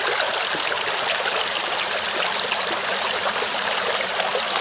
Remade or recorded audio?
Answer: recorded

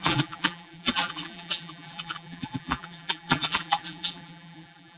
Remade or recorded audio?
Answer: remade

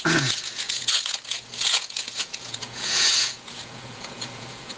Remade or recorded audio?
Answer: remade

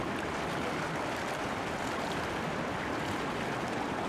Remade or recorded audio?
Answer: recorded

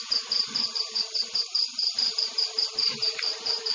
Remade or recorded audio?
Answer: remade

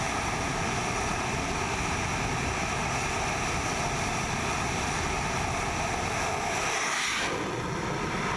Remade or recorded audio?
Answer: recorded